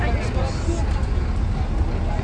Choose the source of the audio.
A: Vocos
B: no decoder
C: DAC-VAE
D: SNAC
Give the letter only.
B